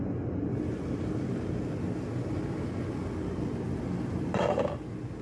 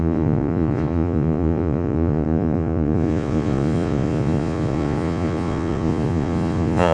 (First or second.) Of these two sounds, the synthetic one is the second